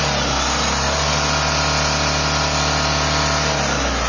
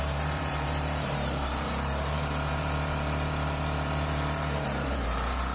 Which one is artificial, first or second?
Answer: second